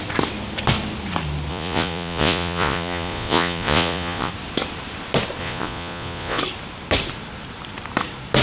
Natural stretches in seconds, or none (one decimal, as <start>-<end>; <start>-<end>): 0.0-1.5; 4.3-5.4; 6.4-8.4

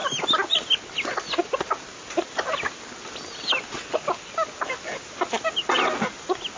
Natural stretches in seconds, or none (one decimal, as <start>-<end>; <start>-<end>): 0.0-6.6

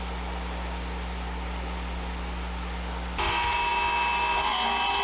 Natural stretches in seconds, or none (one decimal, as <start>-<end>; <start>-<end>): 0.0-5.0

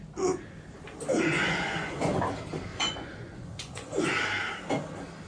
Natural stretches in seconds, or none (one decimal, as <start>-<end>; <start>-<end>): 0.0-1.1; 2.2-2.7; 4.0-5.3